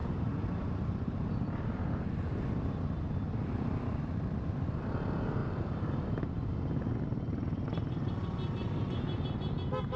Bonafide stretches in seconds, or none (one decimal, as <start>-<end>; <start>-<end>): 0.7-5.4; 6.2-10.0